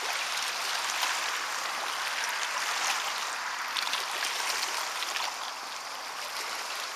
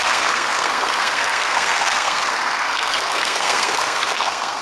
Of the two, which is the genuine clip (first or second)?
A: first